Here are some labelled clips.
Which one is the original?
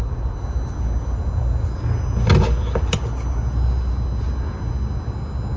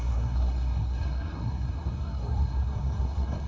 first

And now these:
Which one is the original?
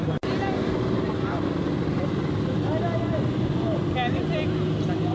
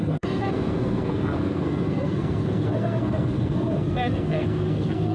first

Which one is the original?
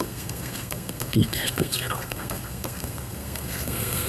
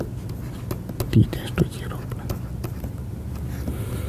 second